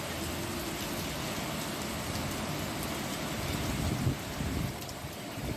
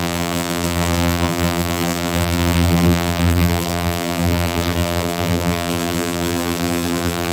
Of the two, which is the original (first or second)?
first